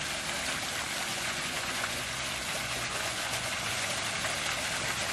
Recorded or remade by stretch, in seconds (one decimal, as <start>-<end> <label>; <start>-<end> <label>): 0.0-1.1 recorded; 1.1-2.1 remade; 2.1-2.6 recorded; 2.6-3.9 remade; 3.9-5.1 recorded